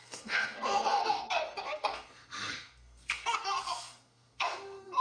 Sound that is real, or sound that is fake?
fake